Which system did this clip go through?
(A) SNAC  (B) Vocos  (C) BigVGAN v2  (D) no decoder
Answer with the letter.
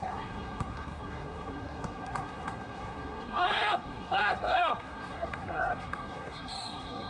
A